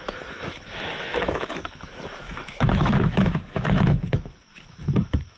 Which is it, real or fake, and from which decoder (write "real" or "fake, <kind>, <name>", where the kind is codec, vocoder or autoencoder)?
fake, autoencoder, DAC-VAE